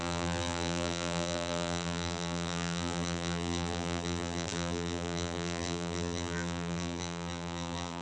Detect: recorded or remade remade